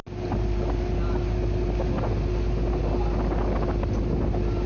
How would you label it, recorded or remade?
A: recorded